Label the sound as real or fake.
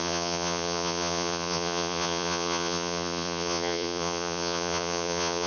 fake